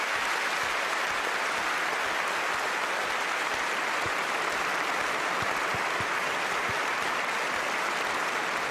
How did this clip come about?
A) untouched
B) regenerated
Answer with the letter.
A